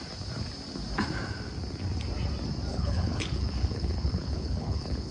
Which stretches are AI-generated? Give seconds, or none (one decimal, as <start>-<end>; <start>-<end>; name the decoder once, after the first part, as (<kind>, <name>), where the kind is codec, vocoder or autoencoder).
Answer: 2.7-5.1 (codec, HILCodec)